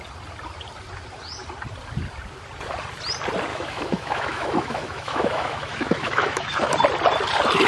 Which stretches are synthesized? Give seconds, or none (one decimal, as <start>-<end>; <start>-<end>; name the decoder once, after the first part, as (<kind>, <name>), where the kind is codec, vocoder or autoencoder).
3.5-6.7 (autoencoder, DAC-VAE)